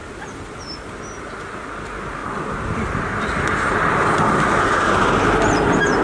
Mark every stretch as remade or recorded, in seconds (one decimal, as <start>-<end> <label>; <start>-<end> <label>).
0.0-2.2 recorded; 2.2-3.3 remade; 3.3-6.0 recorded